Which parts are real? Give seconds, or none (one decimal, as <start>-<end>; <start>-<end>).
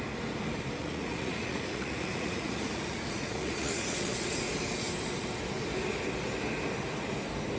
0.0-0.8; 4.5-7.6